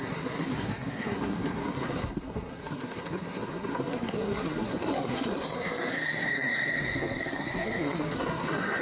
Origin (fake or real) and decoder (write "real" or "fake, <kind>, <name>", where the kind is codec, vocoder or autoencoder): fake, codec, SNAC